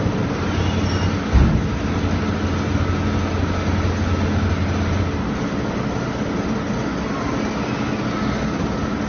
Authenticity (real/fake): real